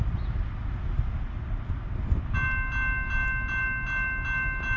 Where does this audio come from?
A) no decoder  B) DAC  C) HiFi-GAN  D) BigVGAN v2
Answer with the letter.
A